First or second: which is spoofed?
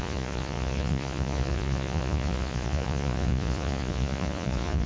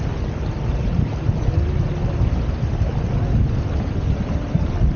first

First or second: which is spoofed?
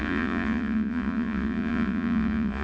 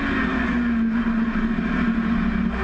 first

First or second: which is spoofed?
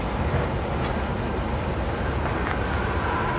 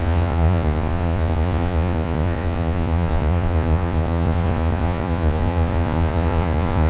second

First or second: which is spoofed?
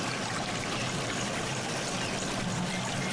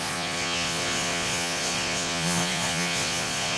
second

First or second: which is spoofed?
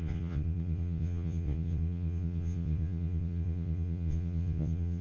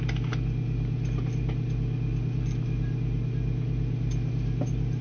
first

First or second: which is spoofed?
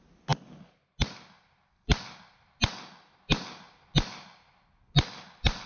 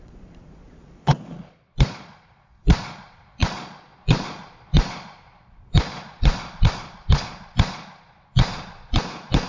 second